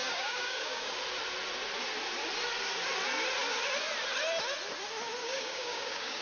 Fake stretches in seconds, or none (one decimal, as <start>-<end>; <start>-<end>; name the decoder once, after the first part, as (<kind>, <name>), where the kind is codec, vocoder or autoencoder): 0.0-0.9 (codec, DAC); 5.2-6.2